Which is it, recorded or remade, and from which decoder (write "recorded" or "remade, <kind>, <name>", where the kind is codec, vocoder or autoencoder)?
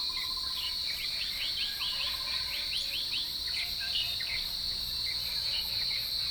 recorded